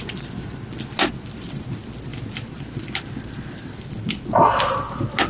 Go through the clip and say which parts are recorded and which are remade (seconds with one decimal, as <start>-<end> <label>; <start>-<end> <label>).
0.0-5.3 recorded

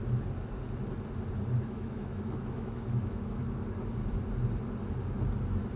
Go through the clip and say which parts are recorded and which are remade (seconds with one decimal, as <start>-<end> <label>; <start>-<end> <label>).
0.0-1.6 recorded; 1.6-3.4 remade; 3.4-5.8 recorded

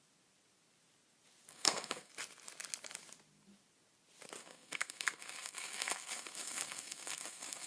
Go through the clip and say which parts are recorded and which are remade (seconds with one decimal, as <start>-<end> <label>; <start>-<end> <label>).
0.0-1.5 recorded; 1.5-2.1 remade; 2.1-4.4 recorded; 4.4-7.7 remade

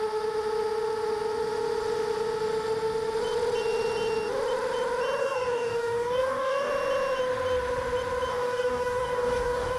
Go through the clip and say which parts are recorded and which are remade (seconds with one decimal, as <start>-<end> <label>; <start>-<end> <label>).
0.0-5.2 recorded; 5.2-6.7 remade; 6.7-8.3 recorded; 8.3-9.8 remade

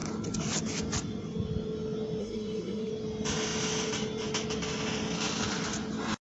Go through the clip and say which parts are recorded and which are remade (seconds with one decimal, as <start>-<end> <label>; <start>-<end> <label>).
0.0-2.2 recorded; 2.2-2.9 remade; 2.9-6.2 recorded

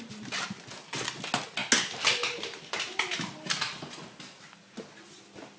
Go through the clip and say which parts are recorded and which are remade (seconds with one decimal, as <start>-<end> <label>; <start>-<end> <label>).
0.0-5.6 recorded

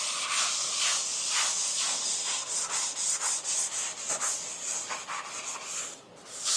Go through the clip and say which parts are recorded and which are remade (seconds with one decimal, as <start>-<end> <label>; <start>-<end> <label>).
0.0-6.6 recorded

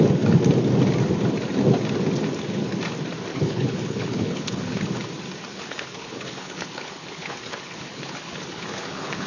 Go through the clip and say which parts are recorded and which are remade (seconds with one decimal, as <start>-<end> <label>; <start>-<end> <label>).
0.0-3.3 recorded; 3.3-5.1 remade; 5.1-5.5 recorded; 5.5-9.3 remade